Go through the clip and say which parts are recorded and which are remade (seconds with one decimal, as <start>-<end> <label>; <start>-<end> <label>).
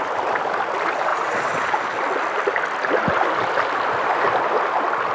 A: 0.0-5.1 recorded